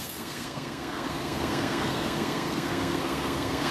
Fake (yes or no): yes